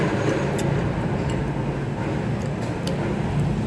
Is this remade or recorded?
recorded